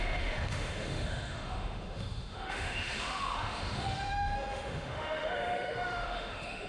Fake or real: fake